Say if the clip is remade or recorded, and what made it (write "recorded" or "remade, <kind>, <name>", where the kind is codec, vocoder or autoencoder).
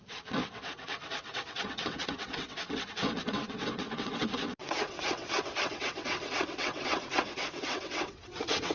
remade, vocoder, WaveNeXt